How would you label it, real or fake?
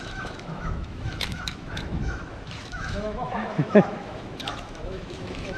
fake